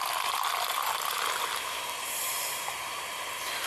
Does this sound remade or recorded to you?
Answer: recorded